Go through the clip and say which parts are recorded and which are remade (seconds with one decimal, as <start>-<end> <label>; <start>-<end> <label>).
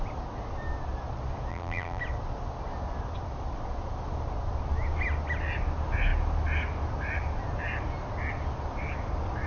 0.0-1.5 recorded; 1.5-2.0 remade; 2.0-9.5 recorded